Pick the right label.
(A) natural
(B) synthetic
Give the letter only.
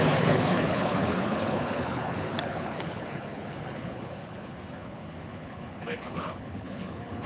B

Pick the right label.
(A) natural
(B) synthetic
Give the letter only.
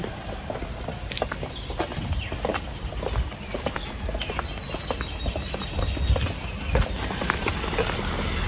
A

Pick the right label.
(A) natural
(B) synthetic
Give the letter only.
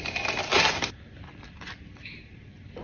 A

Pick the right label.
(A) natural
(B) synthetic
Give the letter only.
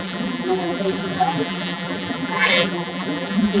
B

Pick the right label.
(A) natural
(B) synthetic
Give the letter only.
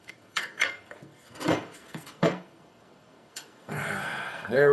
B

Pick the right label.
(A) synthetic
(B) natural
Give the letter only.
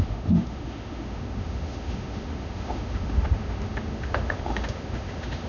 A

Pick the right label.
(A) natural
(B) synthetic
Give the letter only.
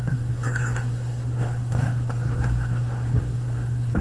B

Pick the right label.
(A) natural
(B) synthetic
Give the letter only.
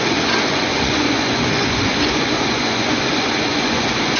B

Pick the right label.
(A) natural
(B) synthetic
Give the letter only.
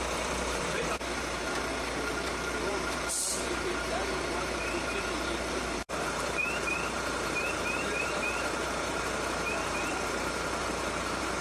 B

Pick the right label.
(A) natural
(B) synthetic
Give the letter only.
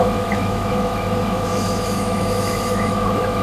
B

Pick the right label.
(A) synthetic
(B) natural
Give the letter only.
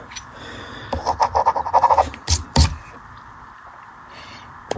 A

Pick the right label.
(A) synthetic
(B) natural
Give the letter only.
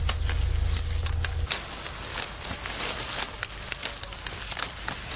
B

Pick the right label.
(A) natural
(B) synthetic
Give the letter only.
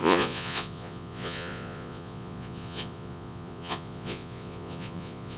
B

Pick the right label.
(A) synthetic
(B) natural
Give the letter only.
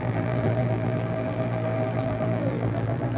A